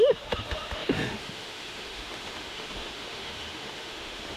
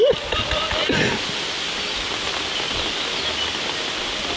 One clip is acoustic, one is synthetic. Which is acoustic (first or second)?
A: second